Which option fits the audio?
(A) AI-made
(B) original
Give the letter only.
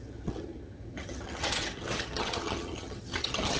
A